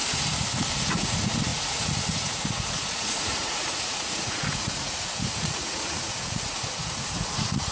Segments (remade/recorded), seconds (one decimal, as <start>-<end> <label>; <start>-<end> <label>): 0.0-0.7 recorded; 0.7-7.7 remade